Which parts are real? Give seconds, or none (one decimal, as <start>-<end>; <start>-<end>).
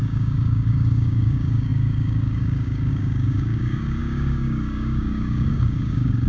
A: none